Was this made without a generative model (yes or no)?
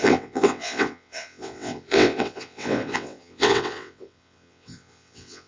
no